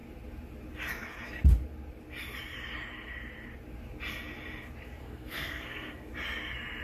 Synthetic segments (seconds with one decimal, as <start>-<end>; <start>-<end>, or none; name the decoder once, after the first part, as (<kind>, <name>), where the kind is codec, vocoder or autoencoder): 5.0-6.1 (codec, SNAC)

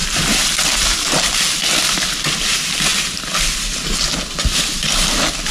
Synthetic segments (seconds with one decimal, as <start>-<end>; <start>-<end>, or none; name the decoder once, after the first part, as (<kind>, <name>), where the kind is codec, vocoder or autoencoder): none

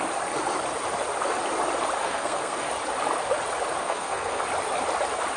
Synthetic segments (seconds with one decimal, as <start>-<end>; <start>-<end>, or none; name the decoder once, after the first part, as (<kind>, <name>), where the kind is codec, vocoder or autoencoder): 2.0-2.7 (codec, SNAC); 3.8-4.4

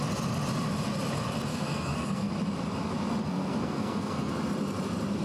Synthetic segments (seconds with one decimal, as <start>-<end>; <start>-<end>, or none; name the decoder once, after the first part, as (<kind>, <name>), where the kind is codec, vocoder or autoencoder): 1.5-2.3 (codec, SNAC); 3.2-4.3

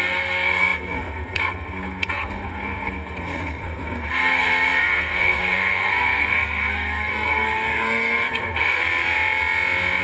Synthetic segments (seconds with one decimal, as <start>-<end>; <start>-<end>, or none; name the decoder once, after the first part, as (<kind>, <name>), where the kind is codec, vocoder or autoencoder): 0.0-8.8 (codec, SNAC)

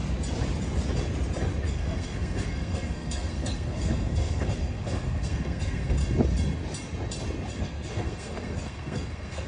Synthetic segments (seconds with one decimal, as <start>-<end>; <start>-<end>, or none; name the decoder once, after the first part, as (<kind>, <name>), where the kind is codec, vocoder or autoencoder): 1.7-6.0 (codec, SNAC); 7.6-9.5